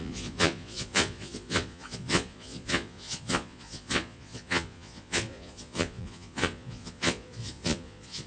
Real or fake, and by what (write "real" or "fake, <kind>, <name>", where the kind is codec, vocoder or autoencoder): fake, vocoder, Vocos